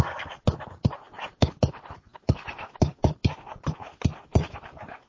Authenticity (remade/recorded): recorded